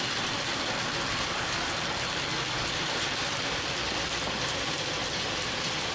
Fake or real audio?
real